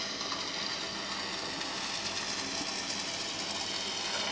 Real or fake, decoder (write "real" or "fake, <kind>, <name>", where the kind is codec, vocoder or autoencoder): real